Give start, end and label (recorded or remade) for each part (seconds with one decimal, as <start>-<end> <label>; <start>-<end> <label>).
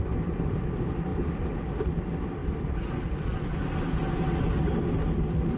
0.0-5.6 recorded